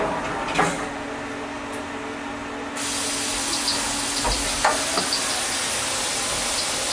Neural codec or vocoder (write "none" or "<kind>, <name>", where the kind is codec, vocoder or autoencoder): none